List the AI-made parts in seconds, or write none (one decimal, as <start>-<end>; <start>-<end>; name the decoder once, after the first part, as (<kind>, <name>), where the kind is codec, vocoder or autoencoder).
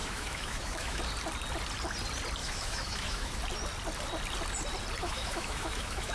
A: 0.0-1.0 (autoencoder, DAC-VAE); 2.4-3.4; 5.0-6.1